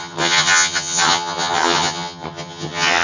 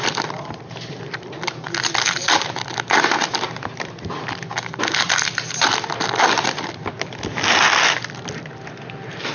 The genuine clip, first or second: second